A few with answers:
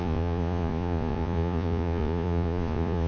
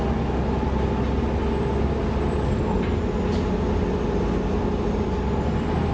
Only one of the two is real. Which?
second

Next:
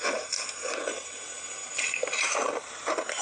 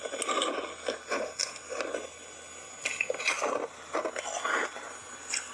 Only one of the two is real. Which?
second